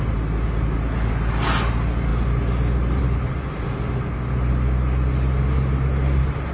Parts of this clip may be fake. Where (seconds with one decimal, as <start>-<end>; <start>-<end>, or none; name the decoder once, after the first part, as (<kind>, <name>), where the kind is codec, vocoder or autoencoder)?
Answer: none